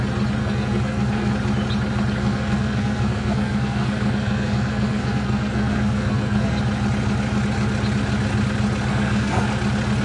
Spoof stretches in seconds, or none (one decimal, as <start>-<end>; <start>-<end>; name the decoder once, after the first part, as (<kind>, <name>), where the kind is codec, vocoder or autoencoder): 0.4-1.3 (codec, SNAC); 2.2-6.6; 8.9-9.5